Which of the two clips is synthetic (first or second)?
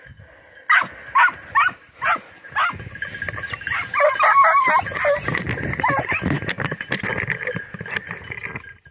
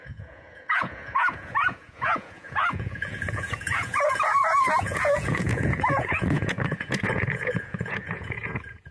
second